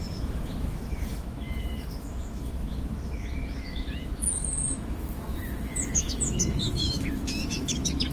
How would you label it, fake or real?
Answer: fake